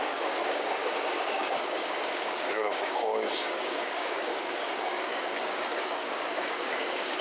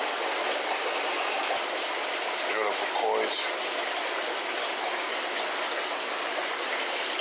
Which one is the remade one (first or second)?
first